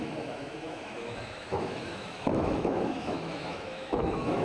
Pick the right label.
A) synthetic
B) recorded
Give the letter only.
A